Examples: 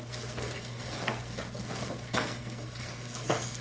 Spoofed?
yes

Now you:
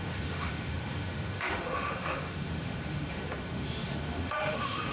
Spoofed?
yes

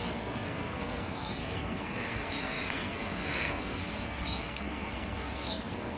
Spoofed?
yes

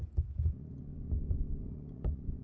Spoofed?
yes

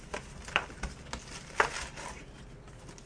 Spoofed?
no